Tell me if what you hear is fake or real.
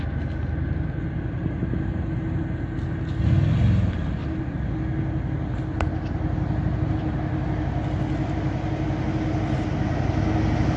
real